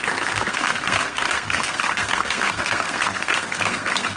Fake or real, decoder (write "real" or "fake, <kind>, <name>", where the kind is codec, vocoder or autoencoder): fake, codec, SNAC